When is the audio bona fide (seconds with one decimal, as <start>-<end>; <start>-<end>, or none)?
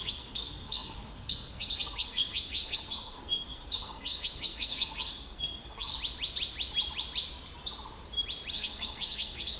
5.9-8.5